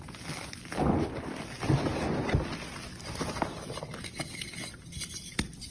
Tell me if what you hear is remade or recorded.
recorded